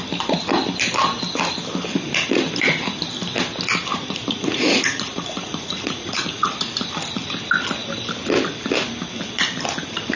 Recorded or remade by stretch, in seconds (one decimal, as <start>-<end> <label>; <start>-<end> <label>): 0.0-3.9 recorded; 3.9-6.5 remade; 6.5-10.2 recorded